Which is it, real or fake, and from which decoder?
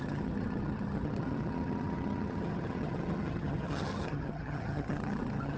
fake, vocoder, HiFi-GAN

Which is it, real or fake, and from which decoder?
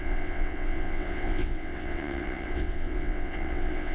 fake, vocoder, WaveNeXt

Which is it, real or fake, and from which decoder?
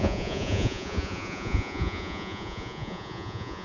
fake, vocoder, Vocos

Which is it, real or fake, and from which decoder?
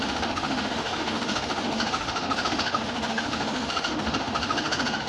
fake, autoencoder, DAC-VAE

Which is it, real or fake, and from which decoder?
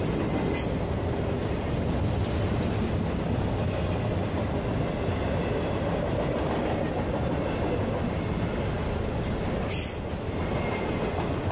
real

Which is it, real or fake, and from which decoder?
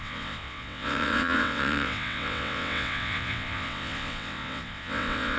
fake, vocoder, WaveNeXt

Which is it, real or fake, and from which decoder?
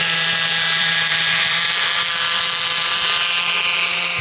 fake, vocoder, BigVGAN v2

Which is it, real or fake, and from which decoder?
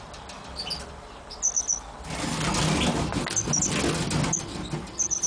real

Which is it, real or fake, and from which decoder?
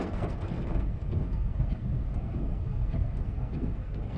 fake, codec, SNAC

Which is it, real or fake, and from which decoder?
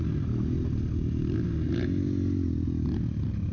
real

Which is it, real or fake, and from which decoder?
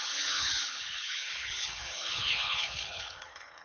fake, codec, HILCodec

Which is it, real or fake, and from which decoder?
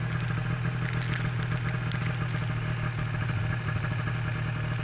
real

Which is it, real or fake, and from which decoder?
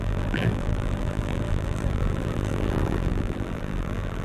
fake, vocoder, BigVGAN v2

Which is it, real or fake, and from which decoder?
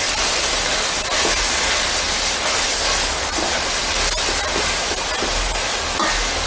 real